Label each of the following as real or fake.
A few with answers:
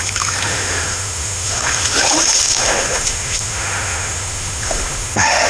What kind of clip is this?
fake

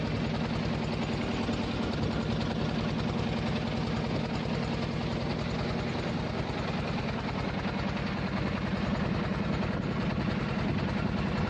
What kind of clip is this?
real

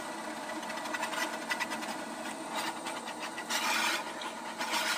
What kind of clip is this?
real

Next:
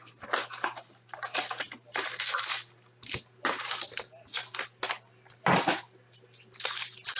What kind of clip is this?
real